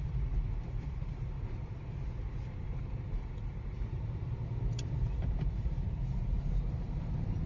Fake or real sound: fake